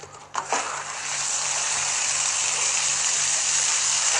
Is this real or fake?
fake